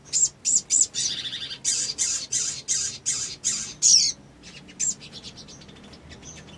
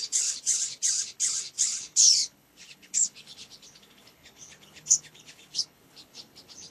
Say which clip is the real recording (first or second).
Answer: first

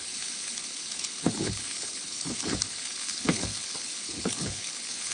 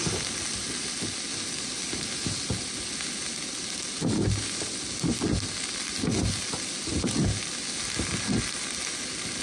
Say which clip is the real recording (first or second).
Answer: second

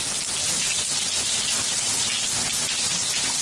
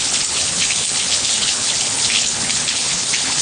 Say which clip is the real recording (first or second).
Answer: first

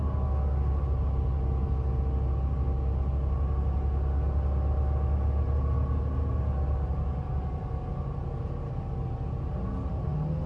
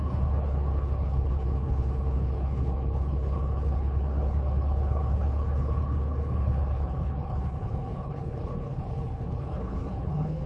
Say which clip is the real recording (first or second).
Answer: first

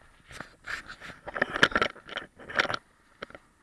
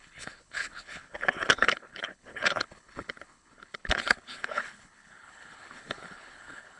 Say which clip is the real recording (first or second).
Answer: first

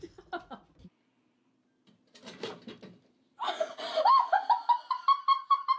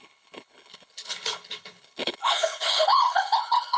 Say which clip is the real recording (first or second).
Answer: first